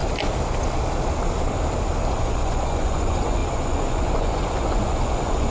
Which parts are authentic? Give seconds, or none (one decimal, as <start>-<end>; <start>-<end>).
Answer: 0.0-2.1